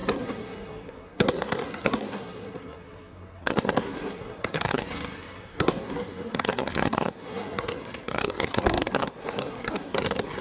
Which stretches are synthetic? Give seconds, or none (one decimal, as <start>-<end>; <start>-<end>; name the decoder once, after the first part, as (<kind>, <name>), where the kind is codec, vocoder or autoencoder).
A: 0.0-10.4 (codec, SNAC)

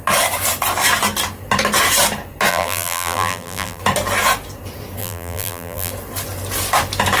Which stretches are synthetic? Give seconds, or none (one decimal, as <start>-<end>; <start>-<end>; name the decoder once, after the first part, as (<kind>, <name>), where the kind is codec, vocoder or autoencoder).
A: 2.5-3.8 (vocoder, BigVGAN v2); 5.0-5.9

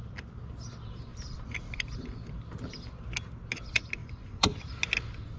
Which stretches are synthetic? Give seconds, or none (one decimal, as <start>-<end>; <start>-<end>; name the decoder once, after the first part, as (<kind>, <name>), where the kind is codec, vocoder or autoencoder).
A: 4.0-4.6 (vocoder, Vocos)

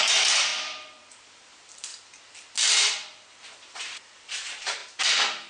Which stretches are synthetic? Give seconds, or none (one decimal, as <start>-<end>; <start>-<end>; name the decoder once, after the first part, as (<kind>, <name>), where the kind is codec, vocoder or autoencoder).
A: 0.0-0.5 (vocoder, BigVGAN v2); 1.1-1.9; 3.6-4.8

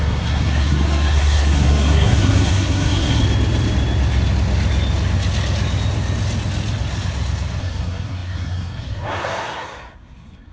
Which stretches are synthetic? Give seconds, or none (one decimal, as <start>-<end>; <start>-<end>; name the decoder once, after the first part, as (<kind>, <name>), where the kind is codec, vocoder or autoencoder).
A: 0.0-3.2 (codec, SNAC); 7.6-10.5